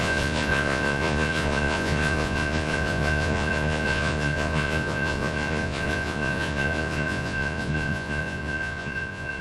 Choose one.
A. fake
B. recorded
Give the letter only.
A